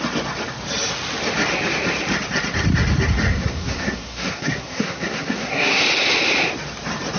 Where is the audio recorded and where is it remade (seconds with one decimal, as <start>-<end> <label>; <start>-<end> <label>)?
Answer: 0.0-3.3 recorded; 3.3-5.8 remade; 5.8-7.2 recorded